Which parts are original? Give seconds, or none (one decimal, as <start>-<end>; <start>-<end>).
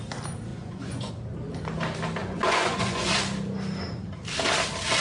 0.0-0.5; 1.1-2.2; 3.1-5.0